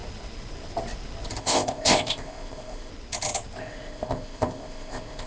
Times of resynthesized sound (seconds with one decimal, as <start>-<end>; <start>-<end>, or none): 1.4-2.9; 3.6-5.3